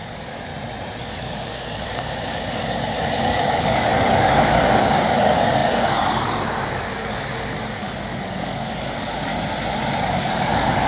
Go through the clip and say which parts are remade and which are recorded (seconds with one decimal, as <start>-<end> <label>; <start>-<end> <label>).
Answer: 0.0-0.5 remade; 0.5-1.0 recorded; 1.0-9.3 remade; 9.3-10.0 recorded; 10.0-10.9 remade